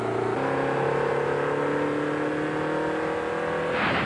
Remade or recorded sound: recorded